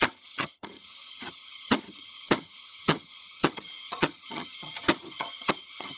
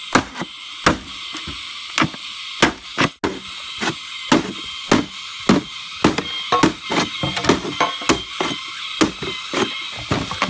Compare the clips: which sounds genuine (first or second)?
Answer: second